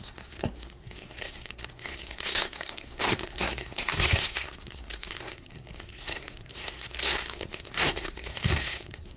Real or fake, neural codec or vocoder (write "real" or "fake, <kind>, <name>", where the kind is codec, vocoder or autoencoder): fake, codec, SNAC